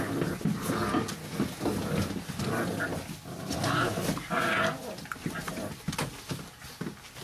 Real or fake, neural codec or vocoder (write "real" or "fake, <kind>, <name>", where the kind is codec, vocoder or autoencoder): real